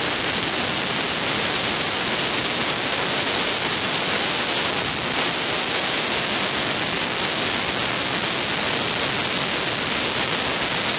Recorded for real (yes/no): yes